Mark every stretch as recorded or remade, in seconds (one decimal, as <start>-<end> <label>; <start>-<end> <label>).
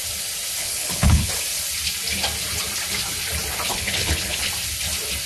0.0-0.6 recorded; 0.6-1.3 remade; 1.3-3.7 recorded; 3.7-4.5 remade; 4.5-5.3 recorded